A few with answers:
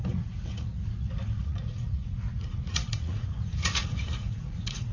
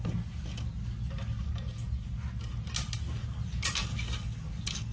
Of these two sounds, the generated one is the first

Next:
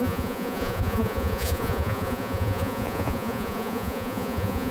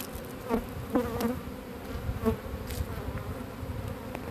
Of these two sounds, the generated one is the first